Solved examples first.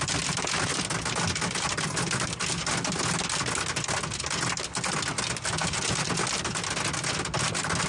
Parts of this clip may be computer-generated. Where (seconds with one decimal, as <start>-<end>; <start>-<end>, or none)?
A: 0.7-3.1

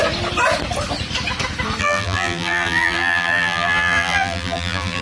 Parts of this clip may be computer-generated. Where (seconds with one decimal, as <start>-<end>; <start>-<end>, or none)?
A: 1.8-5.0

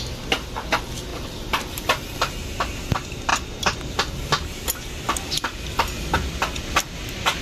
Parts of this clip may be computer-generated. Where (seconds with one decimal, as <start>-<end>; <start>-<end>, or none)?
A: 1.1-2.2

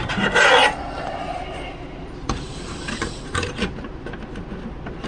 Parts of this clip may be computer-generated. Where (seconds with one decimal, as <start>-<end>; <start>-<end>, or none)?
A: none

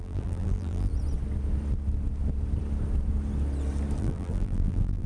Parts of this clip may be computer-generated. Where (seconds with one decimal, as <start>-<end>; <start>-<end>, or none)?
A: 0.0-0.9; 4.0-5.1